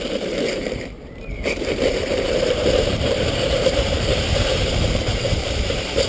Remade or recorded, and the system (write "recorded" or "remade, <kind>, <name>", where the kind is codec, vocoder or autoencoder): remade, vocoder, BigVGAN v2